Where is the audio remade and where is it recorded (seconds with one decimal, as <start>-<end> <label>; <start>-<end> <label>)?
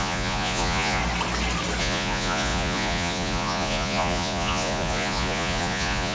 0.0-1.0 remade; 1.0-1.8 recorded; 1.8-6.1 remade